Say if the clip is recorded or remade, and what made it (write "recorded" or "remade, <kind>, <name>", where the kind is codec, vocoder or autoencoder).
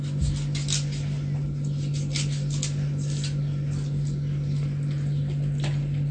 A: recorded